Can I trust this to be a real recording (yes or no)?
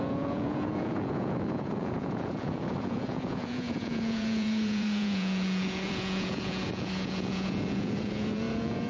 no